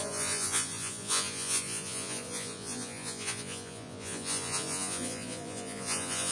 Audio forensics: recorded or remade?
remade